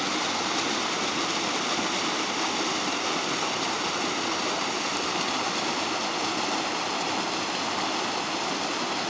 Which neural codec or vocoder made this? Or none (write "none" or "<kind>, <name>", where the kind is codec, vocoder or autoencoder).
none